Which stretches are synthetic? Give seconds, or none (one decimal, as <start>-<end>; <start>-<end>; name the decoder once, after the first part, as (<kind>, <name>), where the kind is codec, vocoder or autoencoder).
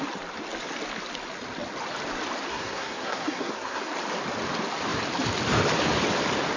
2.5-3.8 (codec, SNAC)